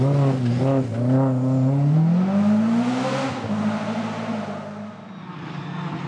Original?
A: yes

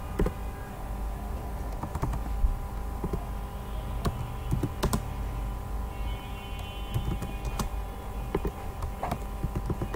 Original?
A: yes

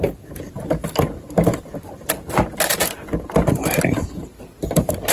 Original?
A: no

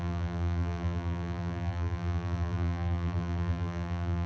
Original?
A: no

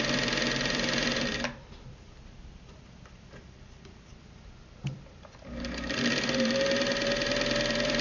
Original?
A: no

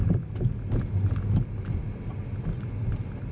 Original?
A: yes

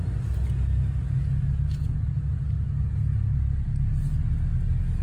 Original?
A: yes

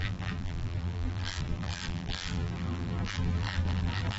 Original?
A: no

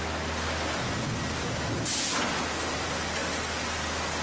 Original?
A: yes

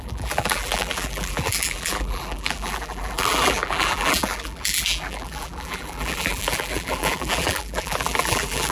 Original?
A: no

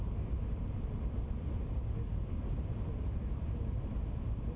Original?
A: yes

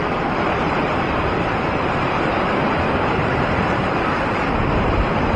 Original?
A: no